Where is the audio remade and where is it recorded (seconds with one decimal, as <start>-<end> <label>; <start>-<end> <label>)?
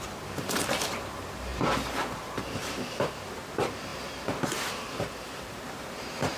0.0-3.9 remade; 3.9-4.7 recorded; 4.7-6.4 remade